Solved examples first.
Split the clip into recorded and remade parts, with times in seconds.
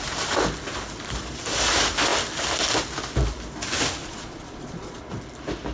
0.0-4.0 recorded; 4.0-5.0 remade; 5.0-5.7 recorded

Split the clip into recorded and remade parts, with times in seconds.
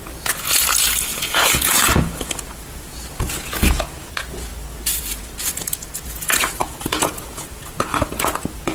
0.0-4.5 remade; 4.5-5.0 recorded; 5.0-8.7 remade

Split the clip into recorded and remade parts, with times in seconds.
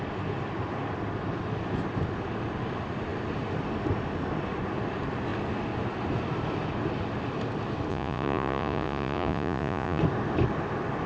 0.0-7.9 recorded; 7.9-10.0 remade; 10.0-11.1 recorded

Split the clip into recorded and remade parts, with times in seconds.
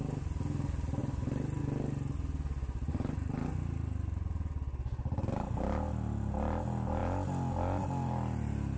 0.0-8.8 recorded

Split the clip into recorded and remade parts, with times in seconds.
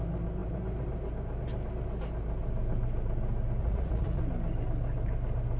0.0-3.6 recorded; 3.6-4.2 remade; 4.2-5.6 recorded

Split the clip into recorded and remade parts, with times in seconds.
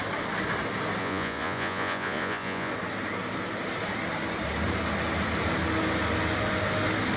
0.0-1.0 recorded; 1.0-2.7 remade; 2.7-7.2 recorded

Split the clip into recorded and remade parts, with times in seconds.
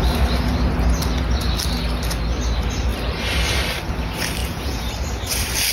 0.0-4.4 recorded; 4.4-4.9 remade; 4.9-5.7 recorded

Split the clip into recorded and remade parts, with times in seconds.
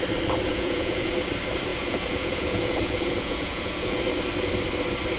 0.0-0.5 recorded; 0.5-1.1 remade; 1.1-1.7 recorded; 1.7-4.0 remade; 4.0-5.2 recorded